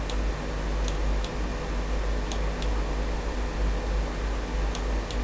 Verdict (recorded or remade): recorded